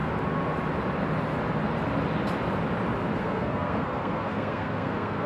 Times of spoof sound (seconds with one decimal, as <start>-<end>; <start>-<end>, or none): 3.2-5.3